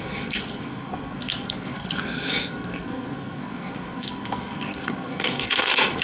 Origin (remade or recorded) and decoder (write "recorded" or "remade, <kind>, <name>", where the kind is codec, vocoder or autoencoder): remade, codec, SNAC